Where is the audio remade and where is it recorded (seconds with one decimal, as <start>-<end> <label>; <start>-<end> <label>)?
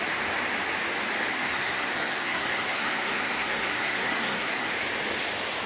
0.0-1.3 recorded; 1.3-4.7 remade; 4.7-5.7 recorded